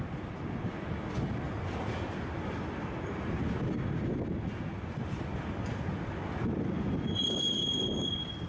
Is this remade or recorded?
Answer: recorded